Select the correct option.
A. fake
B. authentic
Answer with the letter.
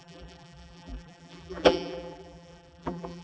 A